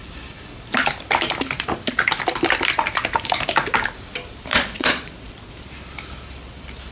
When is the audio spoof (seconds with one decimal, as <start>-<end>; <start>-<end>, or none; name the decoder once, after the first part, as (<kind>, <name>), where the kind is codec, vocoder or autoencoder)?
4.5-5.6 (vocoder, Vocos)